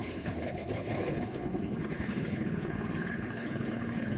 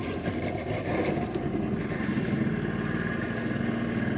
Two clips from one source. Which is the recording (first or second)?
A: second